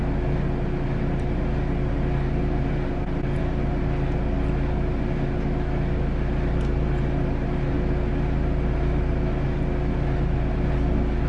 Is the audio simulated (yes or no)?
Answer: no